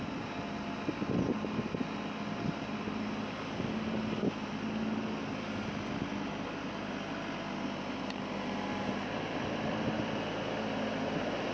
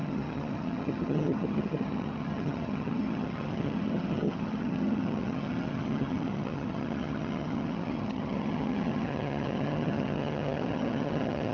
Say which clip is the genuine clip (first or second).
first